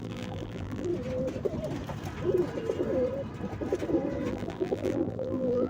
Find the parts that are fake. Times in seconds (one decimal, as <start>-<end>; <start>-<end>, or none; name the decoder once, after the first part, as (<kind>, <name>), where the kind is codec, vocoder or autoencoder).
0.0-0.9 (vocoder, BigVGAN v2); 4.3-5.7